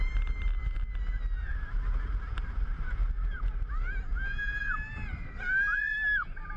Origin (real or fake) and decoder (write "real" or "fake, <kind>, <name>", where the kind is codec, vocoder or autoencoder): real